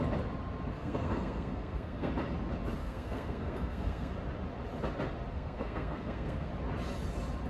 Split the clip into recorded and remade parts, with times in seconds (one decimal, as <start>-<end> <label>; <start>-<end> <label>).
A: 0.0-0.7 recorded; 0.7-2.1 remade; 2.1-2.8 recorded; 2.8-4.1 remade; 4.1-5.3 recorded; 5.3-6.5 remade; 6.5-7.5 recorded